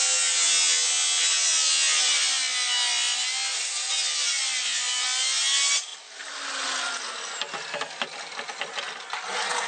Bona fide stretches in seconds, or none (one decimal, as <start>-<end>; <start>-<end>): 0.0-9.7